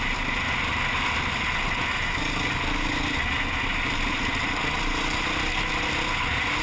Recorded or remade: recorded